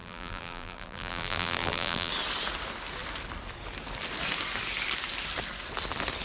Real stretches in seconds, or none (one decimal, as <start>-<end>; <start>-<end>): 2.1-6.2